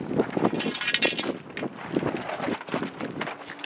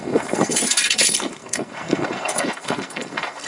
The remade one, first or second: second